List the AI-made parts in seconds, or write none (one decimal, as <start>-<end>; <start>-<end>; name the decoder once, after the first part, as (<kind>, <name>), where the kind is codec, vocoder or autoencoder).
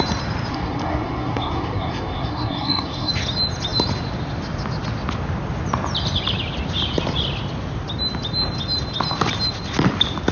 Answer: 0.5-3.1 (codec, SNAC)